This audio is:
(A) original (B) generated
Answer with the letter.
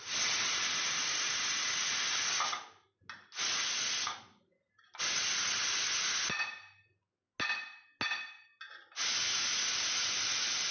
A